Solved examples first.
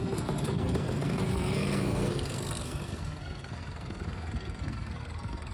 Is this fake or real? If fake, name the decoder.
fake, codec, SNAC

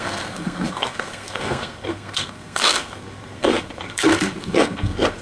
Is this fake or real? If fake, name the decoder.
fake, codec, SNAC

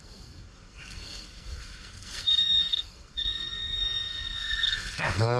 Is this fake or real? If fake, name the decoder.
fake, codec, SNAC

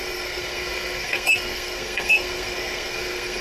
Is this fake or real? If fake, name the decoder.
fake, codec, SNAC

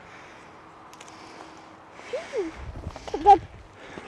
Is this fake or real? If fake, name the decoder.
real